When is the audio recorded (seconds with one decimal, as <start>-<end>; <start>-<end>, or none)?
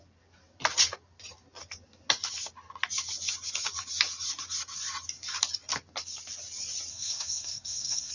0.0-6.9